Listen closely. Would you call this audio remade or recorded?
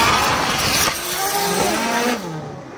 recorded